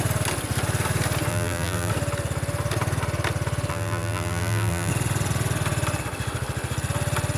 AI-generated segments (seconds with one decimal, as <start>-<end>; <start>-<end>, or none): 1.3-1.9; 3.7-4.9